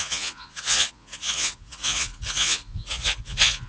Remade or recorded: remade